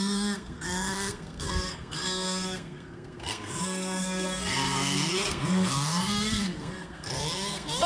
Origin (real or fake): fake